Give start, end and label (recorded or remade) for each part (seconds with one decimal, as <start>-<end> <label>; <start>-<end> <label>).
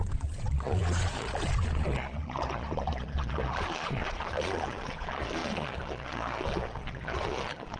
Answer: 0.0-7.8 remade